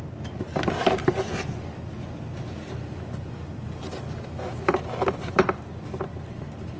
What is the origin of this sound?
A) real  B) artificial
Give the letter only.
A